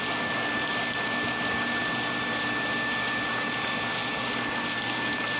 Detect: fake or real real